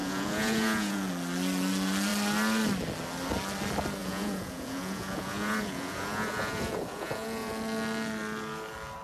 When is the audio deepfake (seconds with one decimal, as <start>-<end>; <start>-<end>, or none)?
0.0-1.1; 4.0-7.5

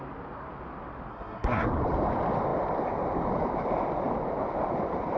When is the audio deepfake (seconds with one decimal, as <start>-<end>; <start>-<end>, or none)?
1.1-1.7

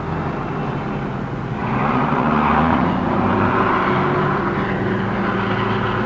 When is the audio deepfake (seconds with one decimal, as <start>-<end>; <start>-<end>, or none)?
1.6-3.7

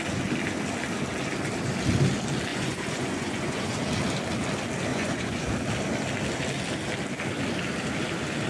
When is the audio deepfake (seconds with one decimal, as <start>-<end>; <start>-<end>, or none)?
2.5-3.8; 4.9-5.5

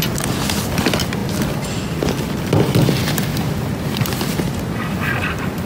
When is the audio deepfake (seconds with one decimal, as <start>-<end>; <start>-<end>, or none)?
1.2-2.4; 3.3-4.3

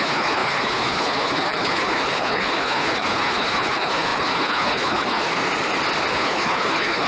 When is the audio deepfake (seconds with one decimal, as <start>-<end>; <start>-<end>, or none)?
0.0-5.3; 6.1-7.1

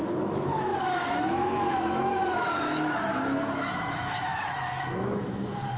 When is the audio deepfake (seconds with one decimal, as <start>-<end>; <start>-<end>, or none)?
0.0-5.8

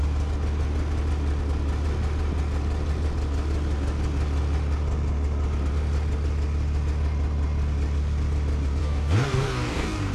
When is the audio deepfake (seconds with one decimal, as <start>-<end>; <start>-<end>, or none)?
8.8-10.1